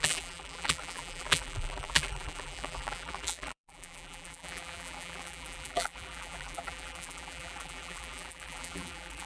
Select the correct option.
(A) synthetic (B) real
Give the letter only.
A